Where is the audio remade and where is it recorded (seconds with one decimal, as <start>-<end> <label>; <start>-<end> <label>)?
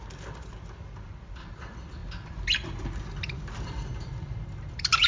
0.0-5.1 recorded